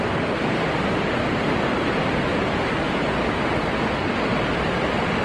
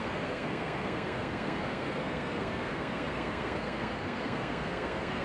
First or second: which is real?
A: first